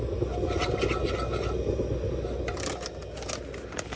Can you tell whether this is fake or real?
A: real